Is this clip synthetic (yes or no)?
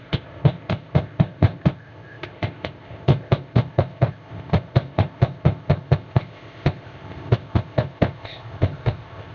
yes